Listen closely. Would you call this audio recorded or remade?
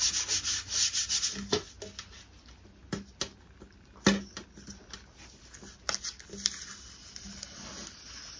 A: recorded